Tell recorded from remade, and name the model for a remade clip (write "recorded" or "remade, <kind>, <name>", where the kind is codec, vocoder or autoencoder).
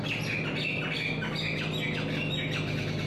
recorded